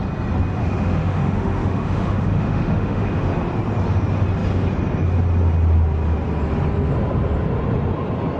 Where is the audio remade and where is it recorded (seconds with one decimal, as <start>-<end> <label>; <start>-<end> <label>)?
0.0-0.6 recorded; 0.6-3.3 remade; 3.3-8.4 recorded